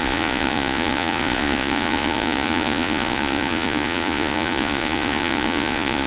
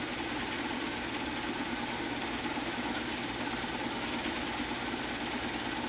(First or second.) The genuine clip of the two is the second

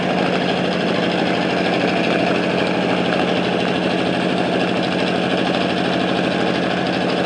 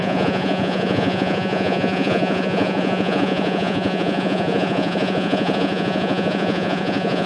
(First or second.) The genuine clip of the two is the first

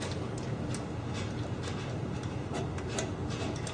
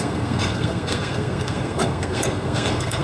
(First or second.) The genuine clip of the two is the first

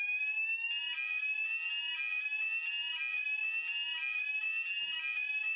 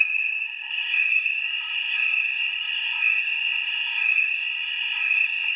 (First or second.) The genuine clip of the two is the first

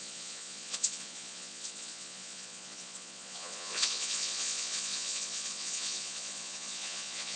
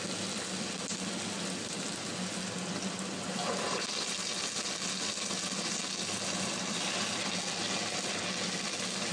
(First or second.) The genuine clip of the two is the second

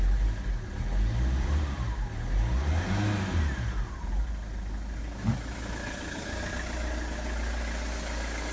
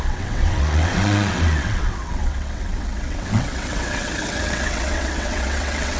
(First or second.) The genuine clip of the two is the first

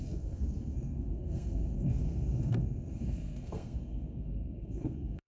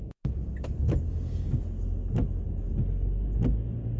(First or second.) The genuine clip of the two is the second